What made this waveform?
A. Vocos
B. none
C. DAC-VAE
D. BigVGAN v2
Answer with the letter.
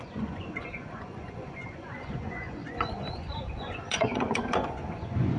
A